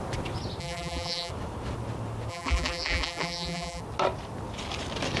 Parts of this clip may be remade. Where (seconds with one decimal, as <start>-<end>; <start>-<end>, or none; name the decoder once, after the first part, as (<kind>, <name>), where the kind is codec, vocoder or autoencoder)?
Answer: 0.6-1.3 (vocoder, BigVGAN v2); 2.3-3.8